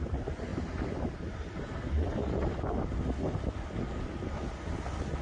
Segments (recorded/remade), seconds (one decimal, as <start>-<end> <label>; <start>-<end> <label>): 0.0-5.2 recorded